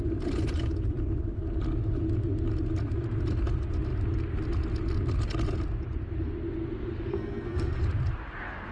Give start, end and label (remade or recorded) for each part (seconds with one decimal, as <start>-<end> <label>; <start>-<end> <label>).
0.0-7.1 recorded; 7.1-7.8 remade; 7.8-8.7 recorded